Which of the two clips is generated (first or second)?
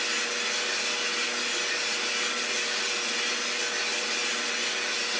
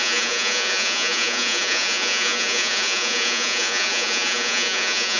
second